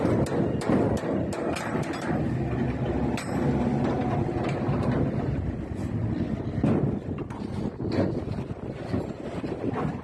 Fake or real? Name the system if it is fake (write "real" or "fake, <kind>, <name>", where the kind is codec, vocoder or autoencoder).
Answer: real